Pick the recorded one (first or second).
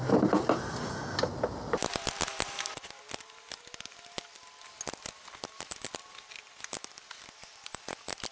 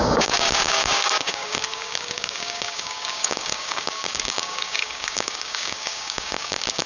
first